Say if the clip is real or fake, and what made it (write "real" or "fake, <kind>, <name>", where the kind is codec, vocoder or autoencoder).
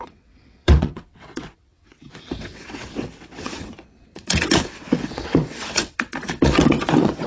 fake, vocoder, WaveNeXt